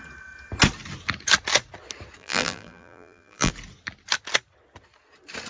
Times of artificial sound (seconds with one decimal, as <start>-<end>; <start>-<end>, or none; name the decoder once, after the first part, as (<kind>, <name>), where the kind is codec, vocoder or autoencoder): 2.2-3.5 (vocoder, BigVGAN v2)